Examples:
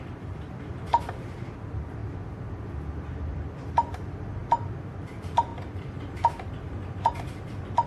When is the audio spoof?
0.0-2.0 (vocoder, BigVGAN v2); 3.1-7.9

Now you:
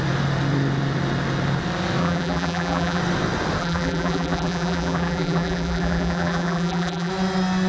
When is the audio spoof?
2.0-3.0 (vocoder, BigVGAN v2); 3.6-7.1

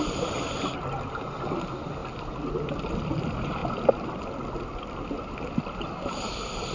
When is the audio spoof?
none

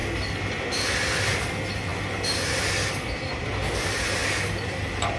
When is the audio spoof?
4.2-5.2 (vocoder, BigVGAN v2)